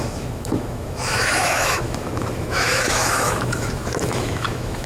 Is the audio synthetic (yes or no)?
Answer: yes